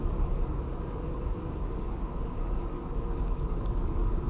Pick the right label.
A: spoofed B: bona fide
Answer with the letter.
A